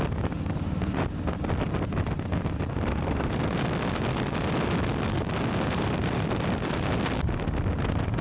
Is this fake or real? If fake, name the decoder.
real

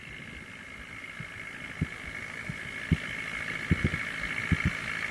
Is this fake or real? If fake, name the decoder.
real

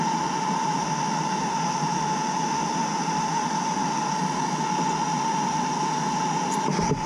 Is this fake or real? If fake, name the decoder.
real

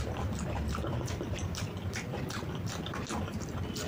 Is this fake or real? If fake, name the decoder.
fake, vocoder, BigVGAN v2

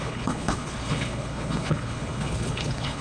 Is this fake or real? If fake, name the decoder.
fake, codec, HILCodec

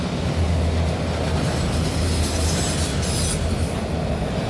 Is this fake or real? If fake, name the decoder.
real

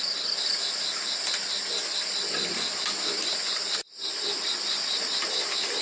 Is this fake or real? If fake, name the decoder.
real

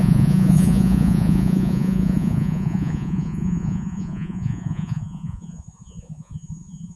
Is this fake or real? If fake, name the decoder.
fake, vocoder, Vocos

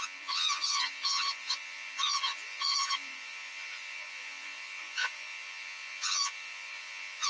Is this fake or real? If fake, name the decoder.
fake, vocoder, Vocos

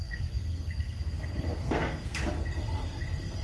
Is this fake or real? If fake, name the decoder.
fake, codec, SNAC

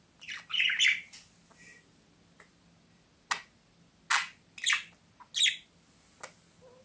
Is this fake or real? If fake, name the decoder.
real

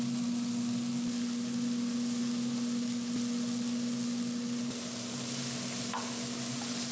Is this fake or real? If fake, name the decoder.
real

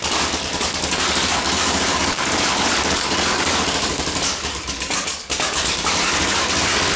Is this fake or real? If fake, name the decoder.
fake, codec, DAC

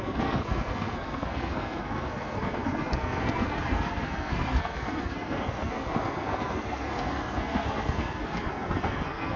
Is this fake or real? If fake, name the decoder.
fake, codec, SNAC